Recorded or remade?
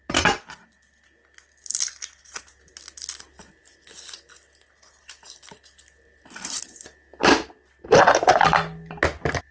recorded